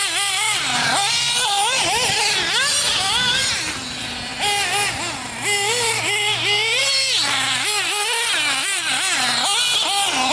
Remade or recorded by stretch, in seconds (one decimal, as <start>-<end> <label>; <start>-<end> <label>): 0.0-2.1 remade; 2.1-10.3 recorded